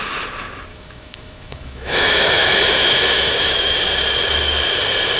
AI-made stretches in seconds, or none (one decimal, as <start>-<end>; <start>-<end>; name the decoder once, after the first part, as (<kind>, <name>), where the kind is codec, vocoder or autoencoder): 0.7-3.8 (autoencoder, DAC-VAE)